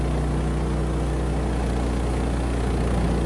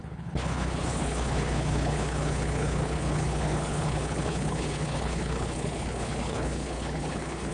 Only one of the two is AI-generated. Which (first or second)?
second